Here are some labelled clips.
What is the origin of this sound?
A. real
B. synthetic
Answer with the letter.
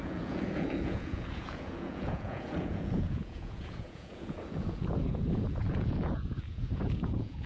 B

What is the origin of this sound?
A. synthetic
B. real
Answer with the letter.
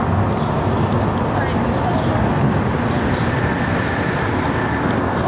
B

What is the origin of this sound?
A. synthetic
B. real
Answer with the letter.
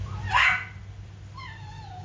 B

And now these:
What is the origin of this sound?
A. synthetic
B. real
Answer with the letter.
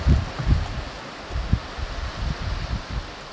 B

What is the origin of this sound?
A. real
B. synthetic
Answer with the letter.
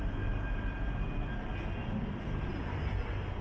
A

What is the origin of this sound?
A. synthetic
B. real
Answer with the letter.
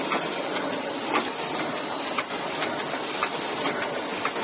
B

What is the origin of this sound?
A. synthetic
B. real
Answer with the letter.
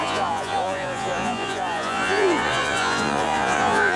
A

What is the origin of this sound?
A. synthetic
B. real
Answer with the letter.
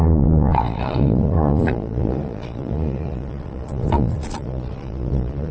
A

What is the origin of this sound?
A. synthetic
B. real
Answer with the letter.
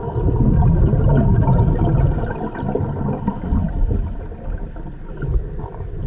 B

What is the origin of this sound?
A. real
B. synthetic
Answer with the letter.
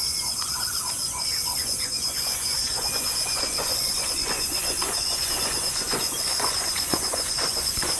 B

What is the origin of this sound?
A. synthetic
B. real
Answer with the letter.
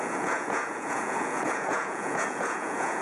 A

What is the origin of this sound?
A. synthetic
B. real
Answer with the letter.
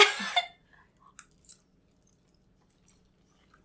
B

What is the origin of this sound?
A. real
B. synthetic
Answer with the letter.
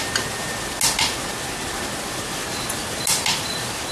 A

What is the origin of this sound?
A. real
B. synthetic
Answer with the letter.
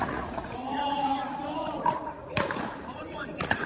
B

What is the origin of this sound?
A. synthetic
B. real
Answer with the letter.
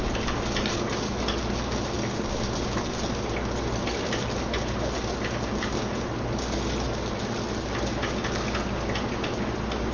B